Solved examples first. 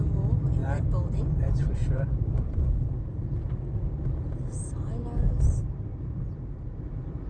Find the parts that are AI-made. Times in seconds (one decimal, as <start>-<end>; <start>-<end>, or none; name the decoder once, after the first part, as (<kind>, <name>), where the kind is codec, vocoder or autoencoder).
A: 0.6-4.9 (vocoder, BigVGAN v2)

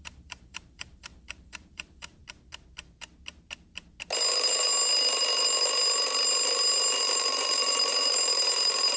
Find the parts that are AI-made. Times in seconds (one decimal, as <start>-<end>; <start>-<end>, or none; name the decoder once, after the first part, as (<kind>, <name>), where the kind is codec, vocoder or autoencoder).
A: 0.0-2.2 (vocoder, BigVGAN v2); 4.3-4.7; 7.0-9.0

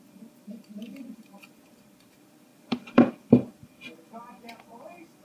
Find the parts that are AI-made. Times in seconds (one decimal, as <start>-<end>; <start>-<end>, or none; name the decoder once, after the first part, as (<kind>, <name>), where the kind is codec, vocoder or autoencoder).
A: 0.0-5.2 (vocoder, BigVGAN v2)

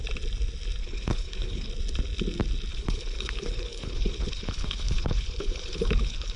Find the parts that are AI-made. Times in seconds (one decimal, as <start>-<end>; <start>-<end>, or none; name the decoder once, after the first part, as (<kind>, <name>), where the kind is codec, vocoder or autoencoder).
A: 0.8-1.7 (codec, HILCodec); 2.7-6.4

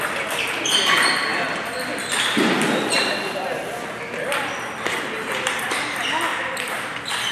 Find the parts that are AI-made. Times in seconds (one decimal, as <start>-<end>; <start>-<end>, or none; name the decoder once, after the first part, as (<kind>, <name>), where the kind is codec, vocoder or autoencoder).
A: 4.9-5.8 (vocoder, BigVGAN v2); 6.3-7.3

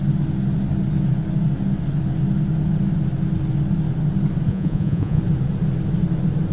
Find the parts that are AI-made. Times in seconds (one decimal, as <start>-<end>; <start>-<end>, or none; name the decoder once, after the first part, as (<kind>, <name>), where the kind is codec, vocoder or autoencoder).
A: 4.5-5.2 (vocoder, Vocos)

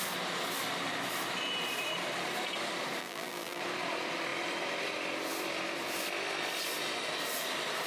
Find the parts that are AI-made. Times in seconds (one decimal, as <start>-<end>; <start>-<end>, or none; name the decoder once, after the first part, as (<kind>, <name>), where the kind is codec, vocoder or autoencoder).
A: 3.0-3.6 (vocoder, BigVGAN v2)

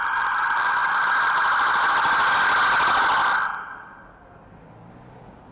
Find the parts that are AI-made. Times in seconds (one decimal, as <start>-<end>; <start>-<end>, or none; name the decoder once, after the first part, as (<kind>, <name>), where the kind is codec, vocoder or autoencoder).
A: 0.8-3.0 (vocoder, BigVGAN v2)